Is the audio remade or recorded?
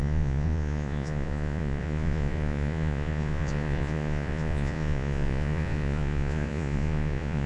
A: remade